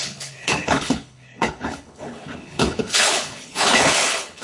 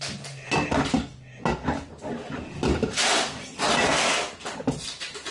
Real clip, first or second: second